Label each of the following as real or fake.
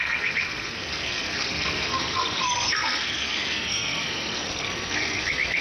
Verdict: fake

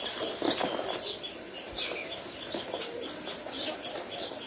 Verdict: real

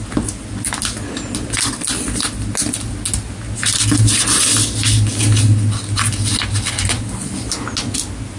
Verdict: real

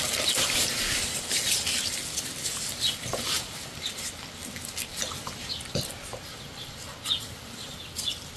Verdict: real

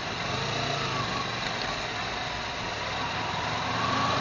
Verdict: real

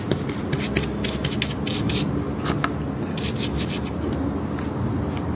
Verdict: real